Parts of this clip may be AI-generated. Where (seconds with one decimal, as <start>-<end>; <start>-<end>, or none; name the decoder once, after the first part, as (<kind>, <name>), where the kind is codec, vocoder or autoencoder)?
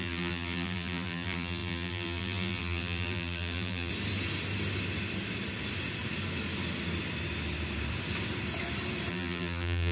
0.0-3.9 (vocoder, BigVGAN v2); 9.1-9.9